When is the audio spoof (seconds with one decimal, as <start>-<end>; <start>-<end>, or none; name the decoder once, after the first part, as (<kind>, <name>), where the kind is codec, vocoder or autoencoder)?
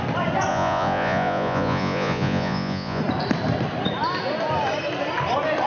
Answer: 0.5-3.0 (vocoder, Vocos)